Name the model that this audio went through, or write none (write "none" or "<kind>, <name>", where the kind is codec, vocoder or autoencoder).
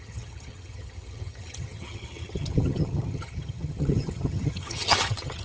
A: vocoder, HiFi-GAN